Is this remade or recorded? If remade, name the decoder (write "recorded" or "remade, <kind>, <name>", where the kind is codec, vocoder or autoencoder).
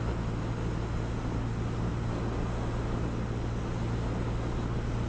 recorded